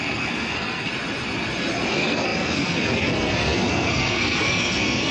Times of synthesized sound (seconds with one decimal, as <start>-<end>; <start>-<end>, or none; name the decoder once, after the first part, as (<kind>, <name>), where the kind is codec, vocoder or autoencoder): 0.0-0.9 (codec, SNAC); 1.9-5.1